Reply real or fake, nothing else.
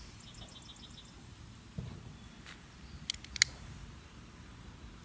real